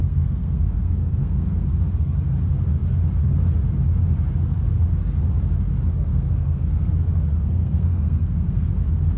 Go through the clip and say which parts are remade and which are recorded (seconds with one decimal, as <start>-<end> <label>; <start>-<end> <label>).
0.0-1.8 remade; 1.8-6.1 recorded; 6.1-6.9 remade; 6.9-7.4 recorded; 7.4-8.7 remade; 8.7-9.2 recorded

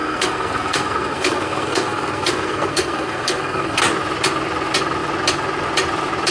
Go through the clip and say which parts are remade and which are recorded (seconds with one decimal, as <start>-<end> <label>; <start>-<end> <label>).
0.0-3.8 remade; 3.8-6.3 recorded

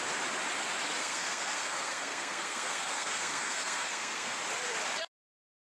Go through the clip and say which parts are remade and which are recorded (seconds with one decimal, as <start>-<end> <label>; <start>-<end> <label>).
0.0-1.0 recorded; 1.0-4.4 remade; 4.4-5.7 recorded

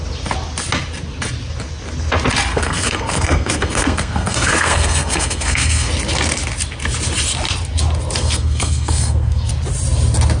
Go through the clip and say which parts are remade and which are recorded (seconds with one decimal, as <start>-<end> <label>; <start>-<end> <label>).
0.0-2.5 recorded; 2.5-5.9 remade; 5.9-8.2 recorded; 8.2-9.5 remade; 9.5-10.4 recorded

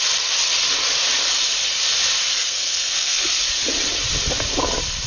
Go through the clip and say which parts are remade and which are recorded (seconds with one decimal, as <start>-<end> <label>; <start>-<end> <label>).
0.0-2.3 recorded; 2.3-3.4 remade; 3.4-5.1 recorded